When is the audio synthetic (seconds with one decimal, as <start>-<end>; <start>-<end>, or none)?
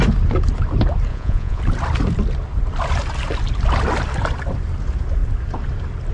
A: 1.1-1.6